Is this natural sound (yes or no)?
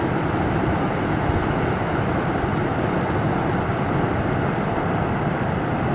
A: yes